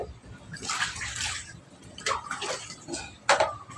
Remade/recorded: recorded